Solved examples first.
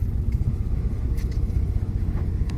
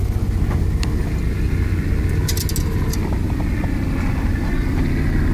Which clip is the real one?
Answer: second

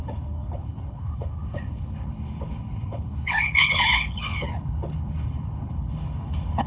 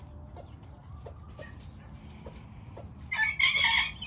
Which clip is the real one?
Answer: second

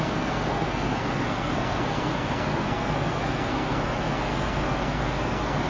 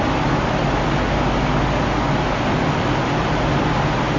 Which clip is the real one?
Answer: second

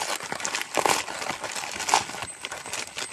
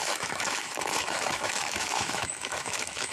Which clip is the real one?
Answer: first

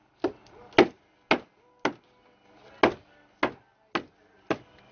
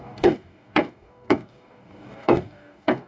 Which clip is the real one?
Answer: first